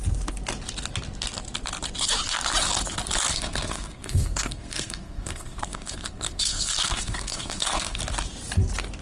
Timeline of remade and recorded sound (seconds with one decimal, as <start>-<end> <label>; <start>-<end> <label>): 0.0-3.3 recorded; 3.3-8.0 remade; 8.0-9.0 recorded